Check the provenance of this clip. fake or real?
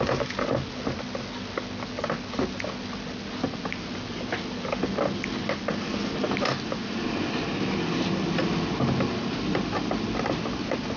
real